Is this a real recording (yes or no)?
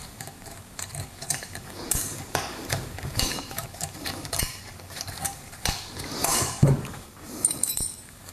no